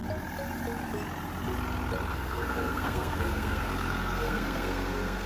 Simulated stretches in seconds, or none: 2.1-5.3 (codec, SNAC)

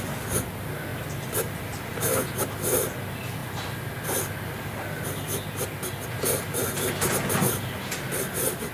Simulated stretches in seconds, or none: none

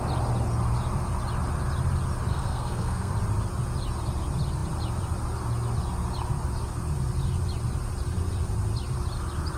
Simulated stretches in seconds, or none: 2.3-3.1 (codec, SNAC)